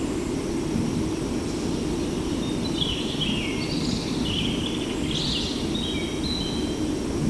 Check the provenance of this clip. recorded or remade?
recorded